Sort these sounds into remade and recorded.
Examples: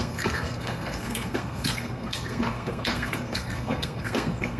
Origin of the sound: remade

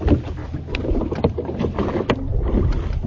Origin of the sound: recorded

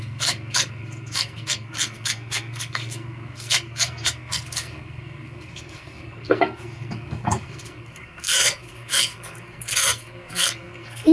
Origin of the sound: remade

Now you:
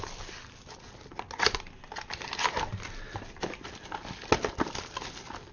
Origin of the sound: recorded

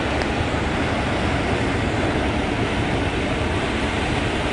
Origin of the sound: recorded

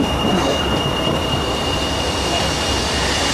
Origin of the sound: recorded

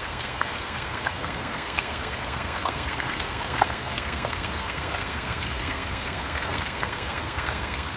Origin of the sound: remade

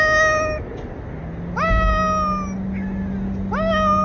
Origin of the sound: recorded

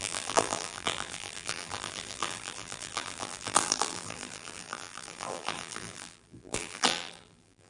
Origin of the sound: remade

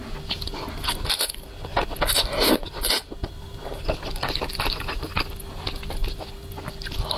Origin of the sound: recorded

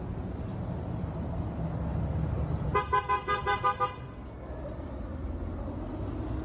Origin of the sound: recorded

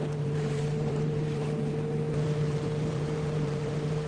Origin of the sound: remade